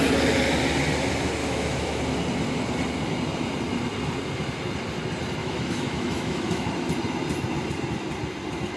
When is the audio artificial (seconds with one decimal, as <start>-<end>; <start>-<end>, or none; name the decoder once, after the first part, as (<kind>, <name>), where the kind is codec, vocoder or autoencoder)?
1.4-2.0 (autoencoder, DAC-VAE); 5.4-6.7